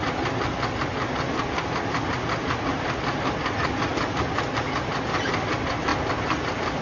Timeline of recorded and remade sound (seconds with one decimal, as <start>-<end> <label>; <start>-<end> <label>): 0.0-6.8 recorded